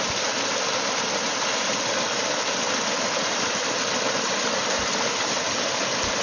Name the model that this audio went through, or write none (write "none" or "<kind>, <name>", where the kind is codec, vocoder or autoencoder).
none